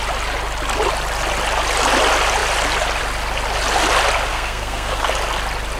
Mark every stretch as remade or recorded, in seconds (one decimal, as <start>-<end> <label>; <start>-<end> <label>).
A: 0.0-4.3 recorded; 4.3-5.1 remade; 5.1-5.8 recorded